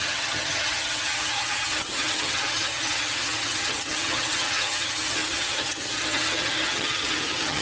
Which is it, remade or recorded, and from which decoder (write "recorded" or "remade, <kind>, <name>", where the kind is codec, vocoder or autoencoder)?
remade, vocoder, HiFi-GAN